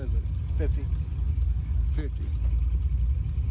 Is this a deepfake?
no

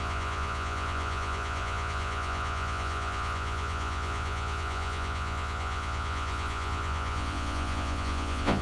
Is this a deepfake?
yes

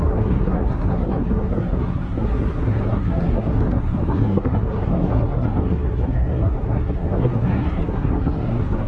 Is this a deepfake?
yes